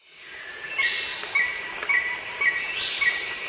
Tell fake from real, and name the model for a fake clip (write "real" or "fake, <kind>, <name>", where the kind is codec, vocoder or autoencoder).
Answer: real